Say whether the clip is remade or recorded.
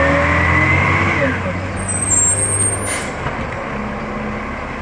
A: recorded